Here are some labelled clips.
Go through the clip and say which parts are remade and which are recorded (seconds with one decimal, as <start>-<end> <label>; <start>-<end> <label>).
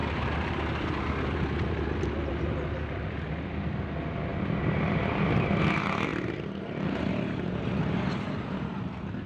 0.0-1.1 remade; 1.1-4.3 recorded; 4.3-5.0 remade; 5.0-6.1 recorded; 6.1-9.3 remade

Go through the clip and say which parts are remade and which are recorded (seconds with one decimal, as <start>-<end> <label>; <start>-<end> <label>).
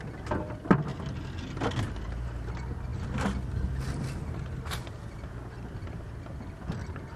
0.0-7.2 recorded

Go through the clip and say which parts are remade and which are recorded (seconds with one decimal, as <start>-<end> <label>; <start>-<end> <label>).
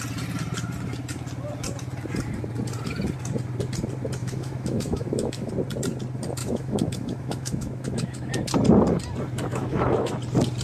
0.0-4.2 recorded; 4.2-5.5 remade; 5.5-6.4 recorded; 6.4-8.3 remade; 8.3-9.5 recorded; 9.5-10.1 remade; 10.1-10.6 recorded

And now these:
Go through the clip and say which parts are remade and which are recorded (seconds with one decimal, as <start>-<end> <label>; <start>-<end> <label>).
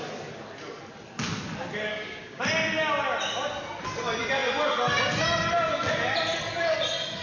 0.0-1.9 recorded; 1.9-2.4 remade; 2.4-7.2 recorded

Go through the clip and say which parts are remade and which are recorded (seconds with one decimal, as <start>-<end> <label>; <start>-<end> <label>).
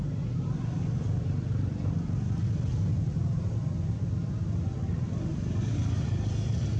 0.0-2.7 recorded; 2.7-3.5 remade; 3.5-5.3 recorded; 5.3-6.8 remade